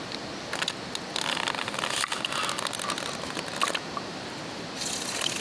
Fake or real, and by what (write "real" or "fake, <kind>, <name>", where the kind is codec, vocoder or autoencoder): real